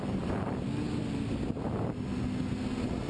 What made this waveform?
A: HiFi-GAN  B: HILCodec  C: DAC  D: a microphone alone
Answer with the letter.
D